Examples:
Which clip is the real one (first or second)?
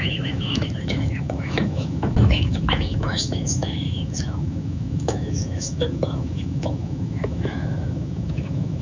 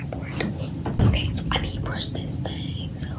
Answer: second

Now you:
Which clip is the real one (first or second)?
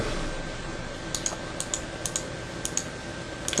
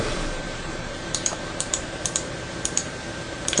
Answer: first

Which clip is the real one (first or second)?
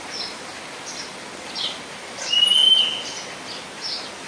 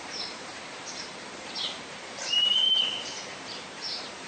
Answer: first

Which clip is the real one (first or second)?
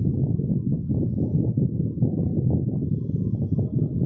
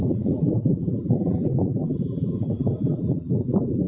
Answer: first